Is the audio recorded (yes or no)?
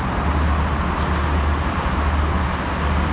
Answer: yes